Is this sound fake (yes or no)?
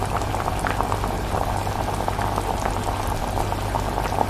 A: yes